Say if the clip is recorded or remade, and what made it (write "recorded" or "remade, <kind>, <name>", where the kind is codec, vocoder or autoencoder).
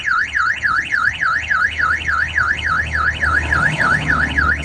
remade, codec, HILCodec